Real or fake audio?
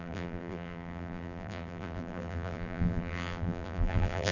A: fake